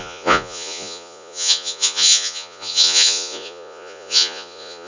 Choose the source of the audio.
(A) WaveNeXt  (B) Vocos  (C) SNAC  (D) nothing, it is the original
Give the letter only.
B